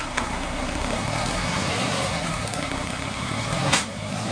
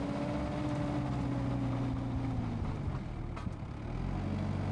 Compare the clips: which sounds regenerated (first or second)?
first